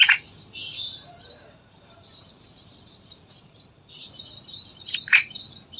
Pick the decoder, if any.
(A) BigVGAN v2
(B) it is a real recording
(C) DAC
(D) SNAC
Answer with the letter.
A